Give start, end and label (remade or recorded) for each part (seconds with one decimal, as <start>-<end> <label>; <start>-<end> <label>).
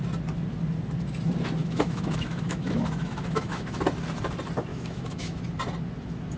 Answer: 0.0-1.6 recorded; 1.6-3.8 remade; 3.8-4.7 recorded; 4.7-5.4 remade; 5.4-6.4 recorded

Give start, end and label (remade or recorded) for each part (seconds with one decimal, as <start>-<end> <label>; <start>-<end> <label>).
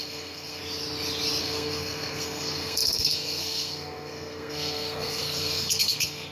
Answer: 0.0-0.6 remade; 0.6-1.4 recorded; 1.4-6.3 remade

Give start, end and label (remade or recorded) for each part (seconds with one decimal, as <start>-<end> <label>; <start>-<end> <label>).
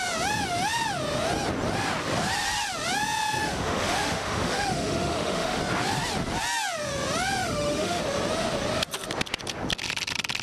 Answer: 0.0-3.4 recorded; 3.4-5.6 remade; 5.6-7.4 recorded; 7.4-8.0 remade; 8.0-10.4 recorded